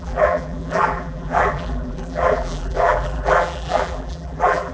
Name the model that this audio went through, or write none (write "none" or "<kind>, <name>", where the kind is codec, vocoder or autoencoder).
vocoder, BigVGAN v2